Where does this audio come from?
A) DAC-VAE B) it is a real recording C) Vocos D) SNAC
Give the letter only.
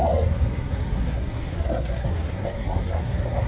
D